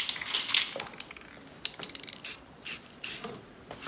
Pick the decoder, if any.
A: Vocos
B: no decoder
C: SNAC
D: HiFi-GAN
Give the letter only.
B